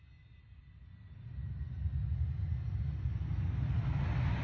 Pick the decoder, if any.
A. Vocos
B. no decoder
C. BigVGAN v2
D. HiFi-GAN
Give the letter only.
B